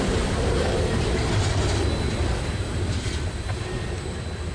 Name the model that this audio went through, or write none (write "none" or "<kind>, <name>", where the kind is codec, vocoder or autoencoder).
none